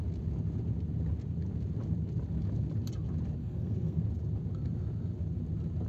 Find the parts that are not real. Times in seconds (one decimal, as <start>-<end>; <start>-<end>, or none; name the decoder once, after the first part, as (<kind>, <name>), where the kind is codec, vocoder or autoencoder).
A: 3.4-4.0 (codec, SNAC)